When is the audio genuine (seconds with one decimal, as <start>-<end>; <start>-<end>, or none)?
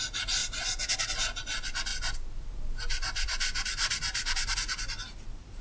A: 0.0-5.6